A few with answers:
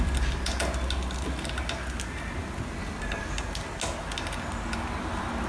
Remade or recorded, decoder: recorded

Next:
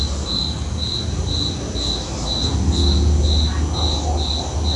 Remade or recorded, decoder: recorded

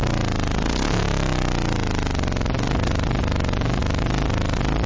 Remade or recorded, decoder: recorded